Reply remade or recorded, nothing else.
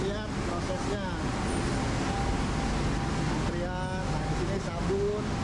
recorded